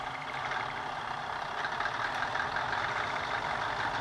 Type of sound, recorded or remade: recorded